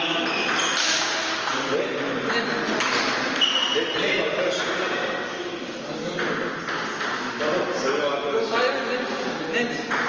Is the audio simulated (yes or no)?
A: no